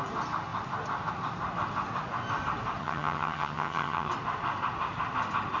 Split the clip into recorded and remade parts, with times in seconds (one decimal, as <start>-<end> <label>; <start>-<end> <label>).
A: 0.0-2.8 recorded; 2.8-4.1 remade; 4.1-5.6 recorded